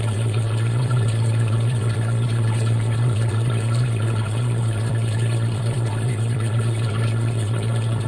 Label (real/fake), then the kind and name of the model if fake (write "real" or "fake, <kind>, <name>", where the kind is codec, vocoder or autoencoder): fake, vocoder, Vocos